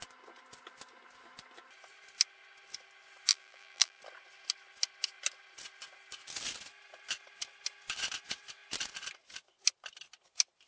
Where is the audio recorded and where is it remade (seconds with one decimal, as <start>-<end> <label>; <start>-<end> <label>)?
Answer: 0.0-3.3 recorded; 3.3-4.0 remade; 4.0-10.7 recorded